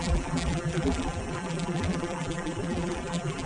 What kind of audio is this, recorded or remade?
remade